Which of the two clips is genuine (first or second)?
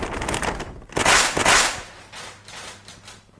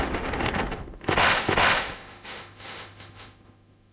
first